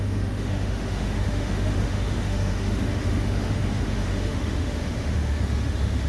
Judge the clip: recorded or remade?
remade